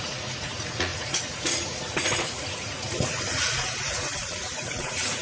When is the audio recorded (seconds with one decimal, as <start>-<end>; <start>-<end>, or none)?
none